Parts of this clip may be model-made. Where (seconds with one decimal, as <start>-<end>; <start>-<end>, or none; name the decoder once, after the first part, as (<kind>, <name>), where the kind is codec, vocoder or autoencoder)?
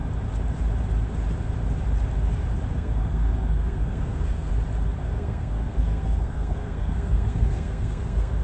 2.7-4.5 (codec, SNAC); 5.0-8.4